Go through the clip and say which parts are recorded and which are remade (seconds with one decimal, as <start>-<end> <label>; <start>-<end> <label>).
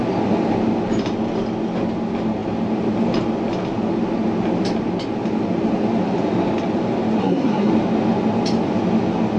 0.0-7.2 recorded; 7.2-7.7 remade; 7.7-9.4 recorded